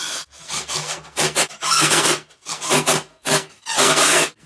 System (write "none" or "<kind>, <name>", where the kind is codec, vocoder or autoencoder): codec, SNAC